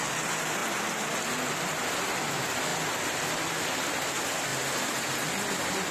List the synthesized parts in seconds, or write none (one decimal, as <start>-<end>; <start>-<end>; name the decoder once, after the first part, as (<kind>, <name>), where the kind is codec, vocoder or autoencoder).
none